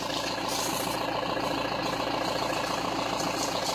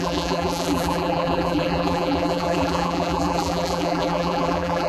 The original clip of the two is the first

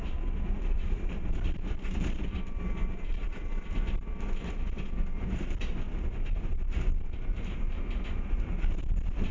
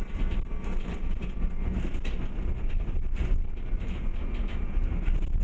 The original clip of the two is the second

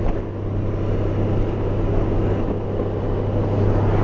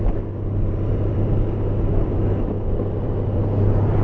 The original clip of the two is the first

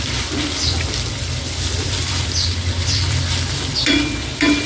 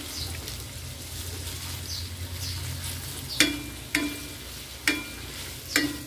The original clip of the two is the second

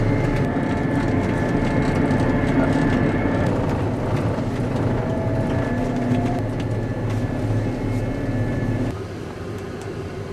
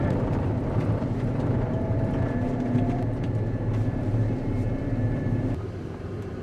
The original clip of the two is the first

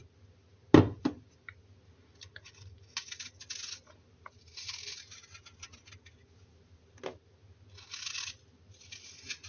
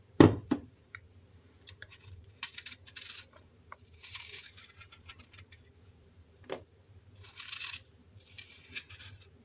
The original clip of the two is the first